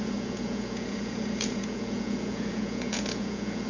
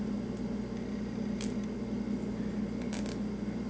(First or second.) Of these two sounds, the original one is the second